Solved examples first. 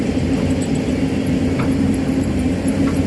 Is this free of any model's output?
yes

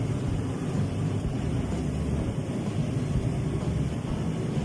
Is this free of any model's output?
no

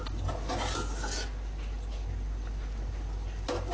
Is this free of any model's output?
yes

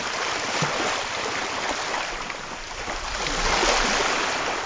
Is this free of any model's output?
yes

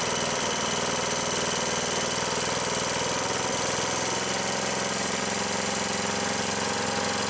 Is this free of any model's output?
yes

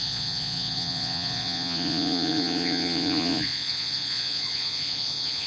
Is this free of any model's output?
no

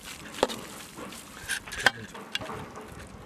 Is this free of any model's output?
yes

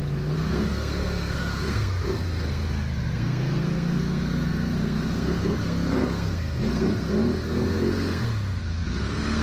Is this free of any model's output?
no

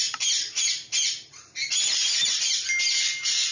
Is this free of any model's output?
yes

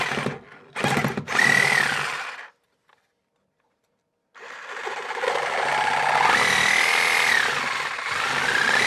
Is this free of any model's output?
yes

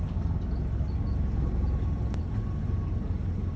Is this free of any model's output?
yes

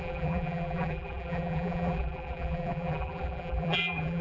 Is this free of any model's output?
no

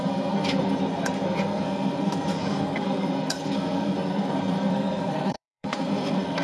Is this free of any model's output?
no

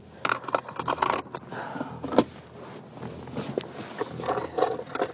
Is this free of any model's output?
yes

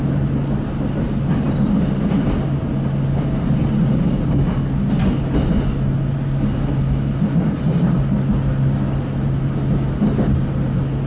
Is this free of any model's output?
yes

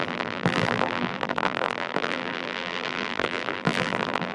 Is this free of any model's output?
no